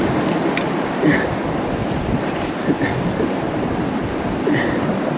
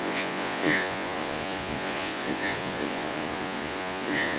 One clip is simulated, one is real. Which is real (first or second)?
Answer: first